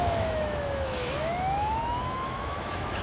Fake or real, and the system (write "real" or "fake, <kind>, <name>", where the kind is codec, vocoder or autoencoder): fake, autoencoder, DAC-VAE